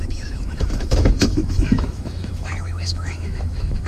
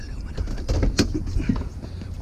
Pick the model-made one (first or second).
first